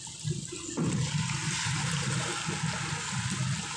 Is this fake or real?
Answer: real